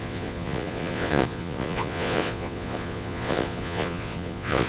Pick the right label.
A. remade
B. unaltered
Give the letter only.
A